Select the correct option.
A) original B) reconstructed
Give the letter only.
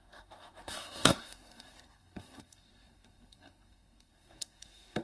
B